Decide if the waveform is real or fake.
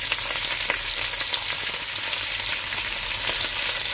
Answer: real